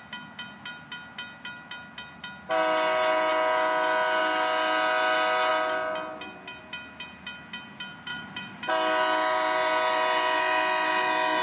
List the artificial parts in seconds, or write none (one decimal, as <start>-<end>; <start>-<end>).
8.1-8.7